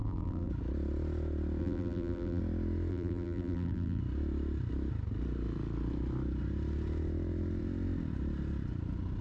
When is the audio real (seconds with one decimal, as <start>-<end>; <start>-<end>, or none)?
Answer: 0.5-1.6; 2.4-2.9; 4.0-9.2